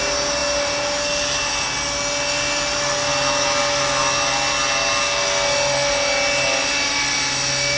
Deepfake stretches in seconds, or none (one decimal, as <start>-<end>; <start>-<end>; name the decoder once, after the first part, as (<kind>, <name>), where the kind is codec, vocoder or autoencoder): none